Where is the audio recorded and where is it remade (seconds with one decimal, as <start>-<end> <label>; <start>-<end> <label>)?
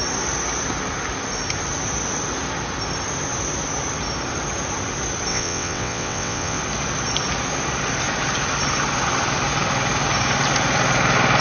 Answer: 0.0-5.3 recorded; 5.3-6.6 remade; 6.6-11.4 recorded